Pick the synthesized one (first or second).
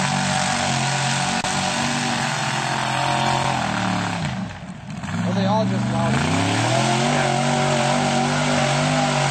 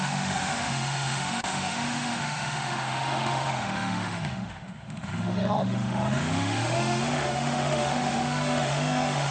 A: second